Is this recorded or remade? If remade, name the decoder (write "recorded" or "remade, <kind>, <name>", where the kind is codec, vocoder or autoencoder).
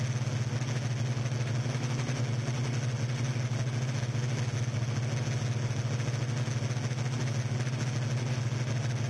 recorded